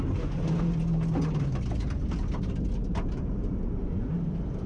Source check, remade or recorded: recorded